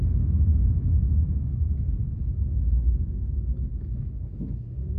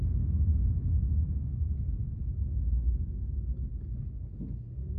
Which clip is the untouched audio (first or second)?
second